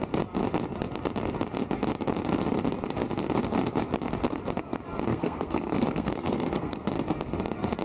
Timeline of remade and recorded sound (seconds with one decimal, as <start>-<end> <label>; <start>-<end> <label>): 0.0-5.1 recorded; 5.1-6.9 remade; 6.9-7.8 recorded